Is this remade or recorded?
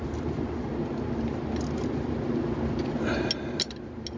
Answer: recorded